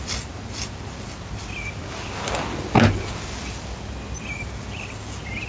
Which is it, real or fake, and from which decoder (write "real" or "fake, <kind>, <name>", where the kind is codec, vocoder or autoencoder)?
real